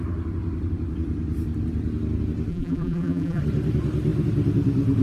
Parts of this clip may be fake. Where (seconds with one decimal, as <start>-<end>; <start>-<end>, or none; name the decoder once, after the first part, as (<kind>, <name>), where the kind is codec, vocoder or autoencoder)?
2.5-3.4 (vocoder, BigVGAN v2)